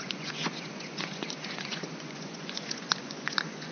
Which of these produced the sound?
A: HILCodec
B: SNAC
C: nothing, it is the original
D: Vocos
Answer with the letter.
D